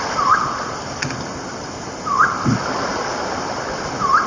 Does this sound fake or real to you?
real